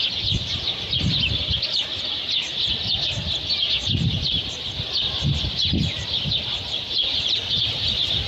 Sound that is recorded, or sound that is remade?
recorded